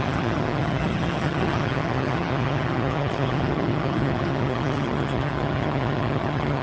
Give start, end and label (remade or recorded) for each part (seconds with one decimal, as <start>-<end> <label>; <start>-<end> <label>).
0.0-6.6 remade